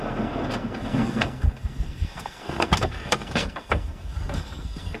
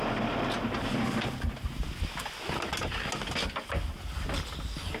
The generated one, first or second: first